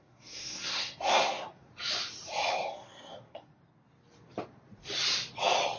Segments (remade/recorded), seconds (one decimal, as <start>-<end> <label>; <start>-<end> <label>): 0.0-1.7 remade; 1.7-2.5 recorded; 2.5-3.6 remade; 3.6-5.8 recorded